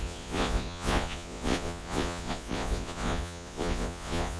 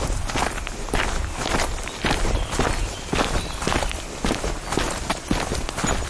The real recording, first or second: second